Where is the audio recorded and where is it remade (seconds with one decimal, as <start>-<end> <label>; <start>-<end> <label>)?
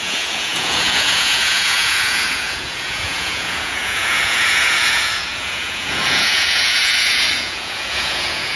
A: 0.0-8.6 remade